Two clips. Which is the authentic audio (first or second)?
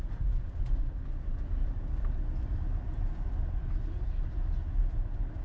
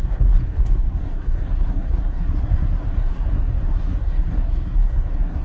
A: first